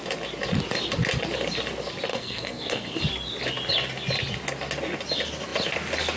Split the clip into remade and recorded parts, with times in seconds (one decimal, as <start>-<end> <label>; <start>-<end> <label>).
0.0-2.1 recorded; 2.1-3.0 remade; 3.0-6.2 recorded